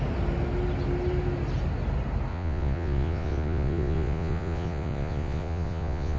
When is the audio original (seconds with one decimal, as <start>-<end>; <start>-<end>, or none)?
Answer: 0.0-2.3